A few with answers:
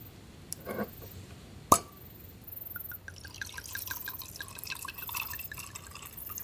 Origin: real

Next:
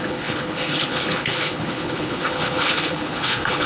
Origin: fake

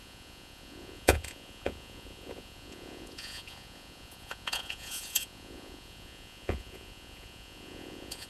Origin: fake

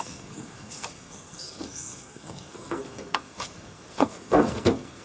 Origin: fake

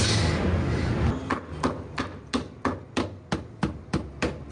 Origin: real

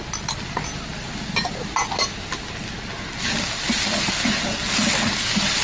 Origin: real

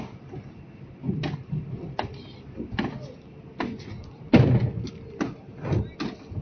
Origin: real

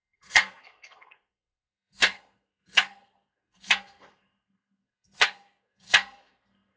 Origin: fake